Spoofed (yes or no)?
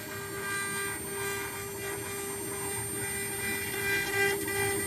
no